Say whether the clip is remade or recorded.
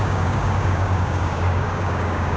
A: remade